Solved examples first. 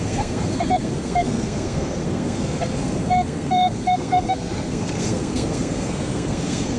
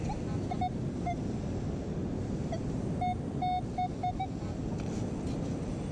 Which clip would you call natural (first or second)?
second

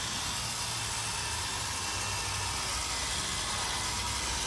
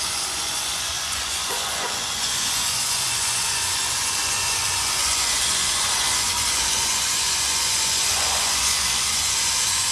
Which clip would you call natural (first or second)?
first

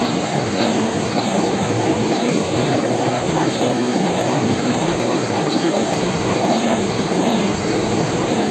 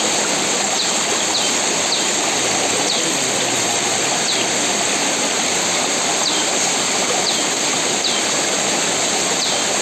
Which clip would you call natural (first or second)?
second